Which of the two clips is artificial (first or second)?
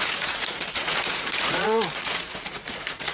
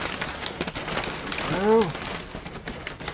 first